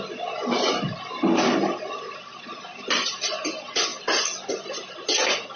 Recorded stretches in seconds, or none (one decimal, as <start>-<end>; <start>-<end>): 0.0-5.6